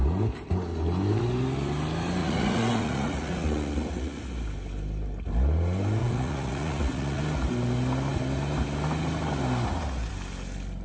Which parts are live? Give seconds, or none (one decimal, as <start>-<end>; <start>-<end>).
0.0-2.2; 4.2-6.0; 7.2-10.8